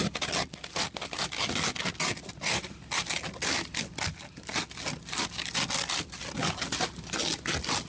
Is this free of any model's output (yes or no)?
yes